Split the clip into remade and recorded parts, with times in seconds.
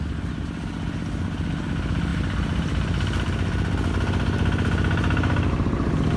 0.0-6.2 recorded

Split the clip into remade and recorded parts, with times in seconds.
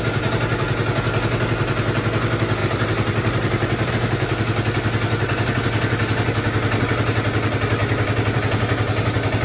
0.0-2.6 recorded; 2.6-3.9 remade; 3.9-7.8 recorded; 7.8-8.4 remade; 8.4-9.4 recorded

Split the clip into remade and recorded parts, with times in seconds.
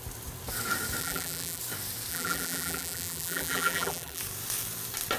0.0-1.0 recorded; 1.0-1.6 remade; 1.6-2.1 recorded; 2.1-4.2 remade; 4.2-5.2 recorded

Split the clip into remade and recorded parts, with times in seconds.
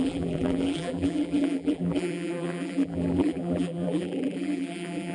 0.0-5.1 remade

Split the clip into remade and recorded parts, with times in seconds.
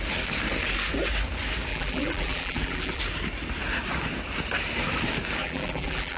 0.0-1.7 recorded; 1.7-3.0 remade; 3.0-5.4 recorded; 5.4-6.2 remade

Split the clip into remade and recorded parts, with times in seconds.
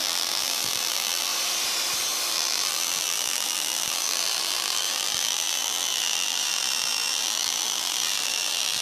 0.0-1.3 remade; 1.3-2.3 recorded; 2.3-8.8 remade